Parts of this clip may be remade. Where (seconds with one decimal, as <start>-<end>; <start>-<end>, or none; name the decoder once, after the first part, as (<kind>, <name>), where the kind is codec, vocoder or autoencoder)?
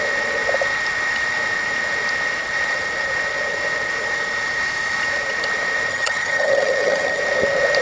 5.9-7.2 (vocoder, HiFi-GAN)